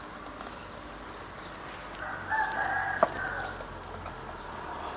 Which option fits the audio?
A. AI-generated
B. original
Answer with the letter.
B